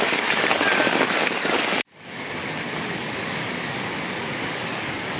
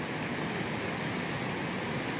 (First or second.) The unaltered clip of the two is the second